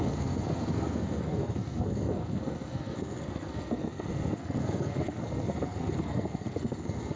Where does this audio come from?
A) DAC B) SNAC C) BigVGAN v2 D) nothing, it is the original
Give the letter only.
B